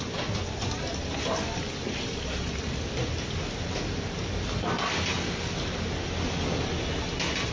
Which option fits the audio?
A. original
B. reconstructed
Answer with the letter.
A